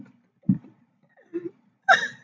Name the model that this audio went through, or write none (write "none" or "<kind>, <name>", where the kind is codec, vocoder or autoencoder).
none